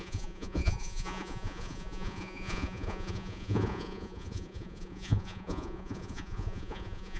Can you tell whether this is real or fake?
fake